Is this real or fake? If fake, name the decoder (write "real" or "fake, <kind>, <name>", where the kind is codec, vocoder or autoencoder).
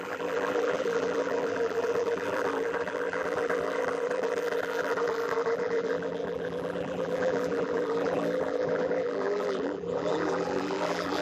fake, vocoder, BigVGAN v2